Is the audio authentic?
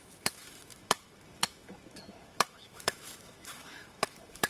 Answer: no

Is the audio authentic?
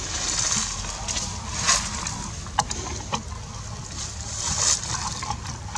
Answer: yes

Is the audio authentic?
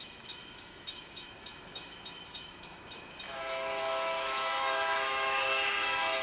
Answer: no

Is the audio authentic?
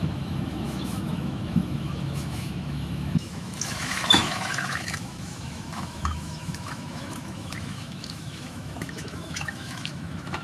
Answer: no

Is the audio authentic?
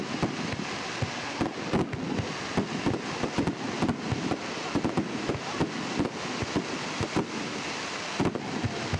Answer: yes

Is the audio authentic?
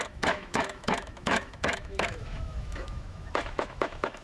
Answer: no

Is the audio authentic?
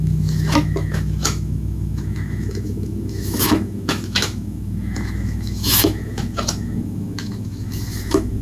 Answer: no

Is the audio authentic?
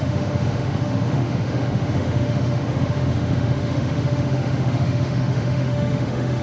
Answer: no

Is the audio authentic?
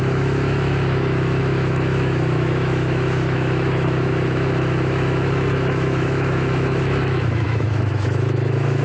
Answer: no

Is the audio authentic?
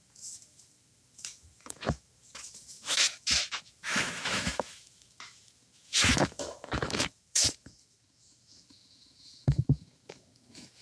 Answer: no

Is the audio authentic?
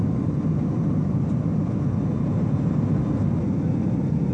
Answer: yes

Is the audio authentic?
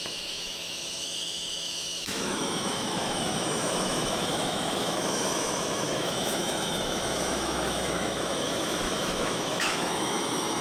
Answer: no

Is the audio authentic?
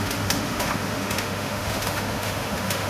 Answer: no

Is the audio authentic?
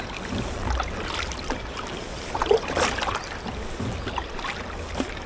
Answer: yes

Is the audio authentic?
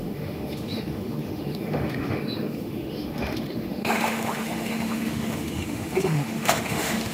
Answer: no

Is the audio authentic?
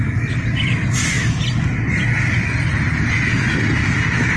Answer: yes